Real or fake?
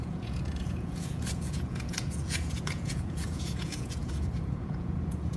fake